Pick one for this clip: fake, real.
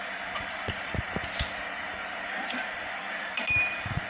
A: fake